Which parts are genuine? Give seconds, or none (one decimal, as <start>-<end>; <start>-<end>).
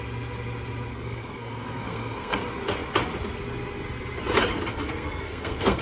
0.0-0.9; 2.4-4.7